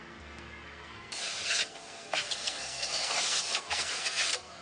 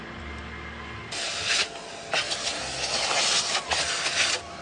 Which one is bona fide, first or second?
second